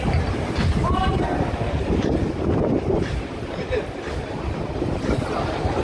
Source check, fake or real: fake